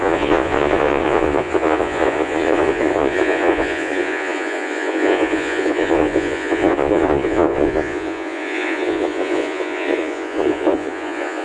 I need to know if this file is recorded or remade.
remade